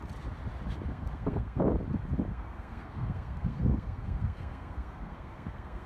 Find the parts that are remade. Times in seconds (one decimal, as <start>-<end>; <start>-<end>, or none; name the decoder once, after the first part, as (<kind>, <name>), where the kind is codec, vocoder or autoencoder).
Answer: 0.9-1.6 (codec, SNAC); 2.3-5.9